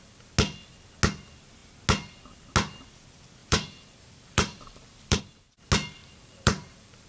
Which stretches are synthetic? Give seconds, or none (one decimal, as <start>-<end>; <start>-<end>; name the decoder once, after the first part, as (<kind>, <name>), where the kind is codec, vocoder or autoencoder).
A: 3.4-5.2 (vocoder, BigVGAN v2); 6.0-7.1